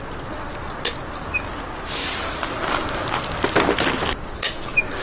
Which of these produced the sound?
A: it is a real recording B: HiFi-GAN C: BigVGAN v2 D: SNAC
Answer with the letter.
A